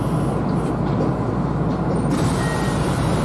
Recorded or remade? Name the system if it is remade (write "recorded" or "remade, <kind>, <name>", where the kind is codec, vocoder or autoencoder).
recorded